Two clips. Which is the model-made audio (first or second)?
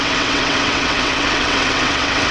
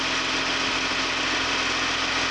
first